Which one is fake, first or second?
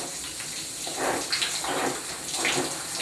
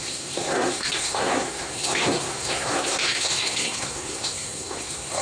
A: second